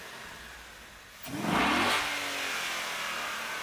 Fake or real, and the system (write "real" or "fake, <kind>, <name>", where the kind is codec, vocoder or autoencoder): real